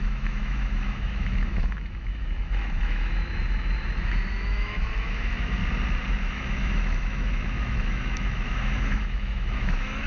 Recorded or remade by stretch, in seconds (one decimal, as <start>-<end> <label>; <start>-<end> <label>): 0.0-5.6 remade; 5.6-6.1 recorded; 6.1-10.1 remade

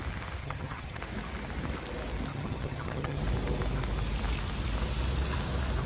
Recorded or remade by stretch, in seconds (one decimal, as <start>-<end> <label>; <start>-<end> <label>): 0.0-0.4 recorded; 0.4-1.0 remade; 1.0-2.3 recorded; 2.3-3.2 remade; 3.2-5.9 recorded